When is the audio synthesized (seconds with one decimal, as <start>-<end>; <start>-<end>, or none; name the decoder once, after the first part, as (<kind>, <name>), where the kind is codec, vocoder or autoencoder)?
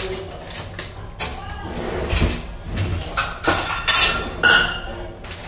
none